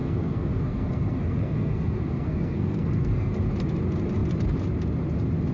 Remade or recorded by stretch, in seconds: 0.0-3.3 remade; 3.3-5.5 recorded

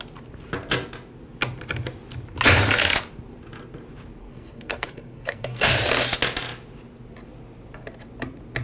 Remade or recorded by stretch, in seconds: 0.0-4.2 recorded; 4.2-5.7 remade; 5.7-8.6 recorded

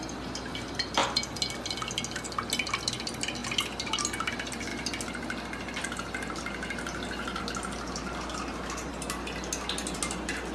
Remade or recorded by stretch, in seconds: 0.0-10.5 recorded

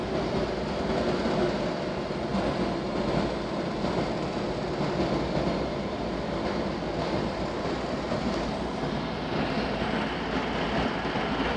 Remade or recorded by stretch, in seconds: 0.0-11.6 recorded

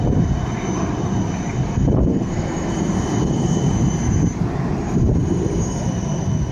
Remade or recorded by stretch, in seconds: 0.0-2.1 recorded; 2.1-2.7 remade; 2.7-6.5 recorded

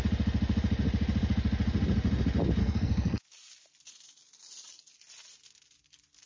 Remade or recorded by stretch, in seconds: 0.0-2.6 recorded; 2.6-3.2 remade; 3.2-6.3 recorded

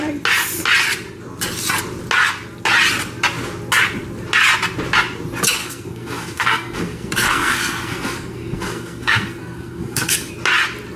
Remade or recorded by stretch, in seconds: 0.0-5.6 recorded; 5.6-10.3 remade; 10.3-11.0 recorded

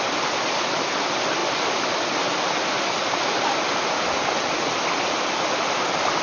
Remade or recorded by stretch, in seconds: 0.0-6.2 recorded